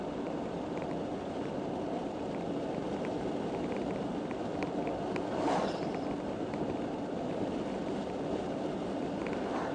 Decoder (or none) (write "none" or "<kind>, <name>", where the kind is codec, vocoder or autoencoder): vocoder, BigVGAN v2